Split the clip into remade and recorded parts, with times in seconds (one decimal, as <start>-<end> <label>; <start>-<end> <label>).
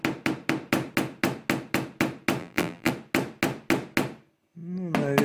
0.0-2.4 recorded; 2.4-2.9 remade; 2.9-5.2 recorded